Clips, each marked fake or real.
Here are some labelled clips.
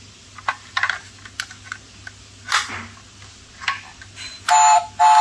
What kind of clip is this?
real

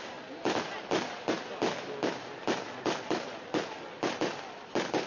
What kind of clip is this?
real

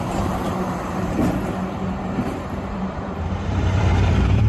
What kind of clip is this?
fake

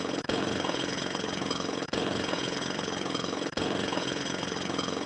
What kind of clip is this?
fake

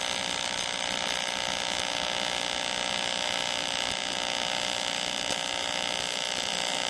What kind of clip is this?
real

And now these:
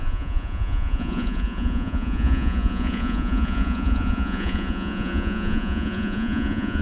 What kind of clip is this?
fake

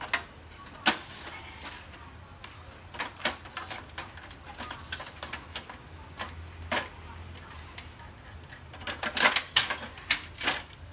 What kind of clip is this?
real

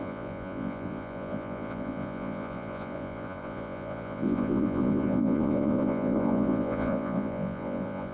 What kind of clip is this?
fake